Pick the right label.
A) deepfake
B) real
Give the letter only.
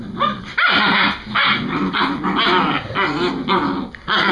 B